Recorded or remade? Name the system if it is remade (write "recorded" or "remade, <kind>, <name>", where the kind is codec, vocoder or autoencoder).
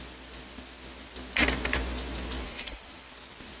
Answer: recorded